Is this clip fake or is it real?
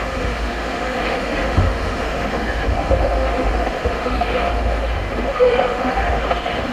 fake